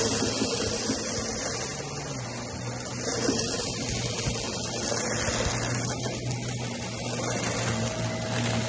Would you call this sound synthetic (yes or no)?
no